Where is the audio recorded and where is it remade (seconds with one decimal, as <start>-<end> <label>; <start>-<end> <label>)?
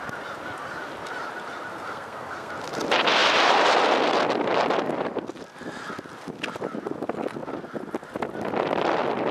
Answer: 0.0-1.7 recorded; 1.7-2.5 remade; 2.5-9.3 recorded